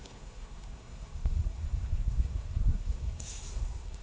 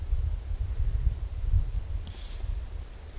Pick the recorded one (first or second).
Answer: second